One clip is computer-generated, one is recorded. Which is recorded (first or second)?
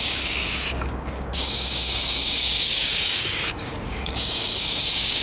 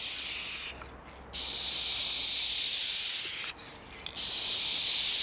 second